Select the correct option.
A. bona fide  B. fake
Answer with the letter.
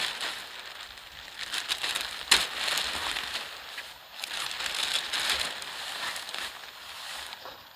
A